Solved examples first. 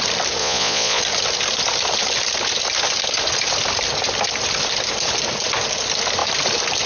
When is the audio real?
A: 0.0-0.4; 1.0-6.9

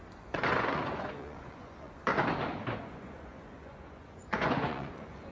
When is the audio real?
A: 2.1-2.8

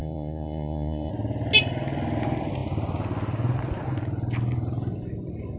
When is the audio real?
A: 1.1-5.6

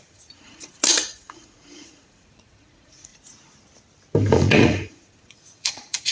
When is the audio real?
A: 3.1-4.3

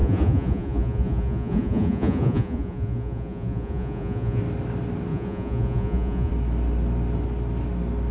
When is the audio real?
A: 4.4-5.1; 6.3-8.1

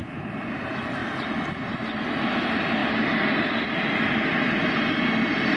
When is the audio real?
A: 0.0-5.6

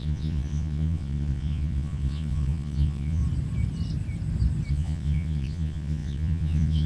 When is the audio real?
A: 3.2-4.7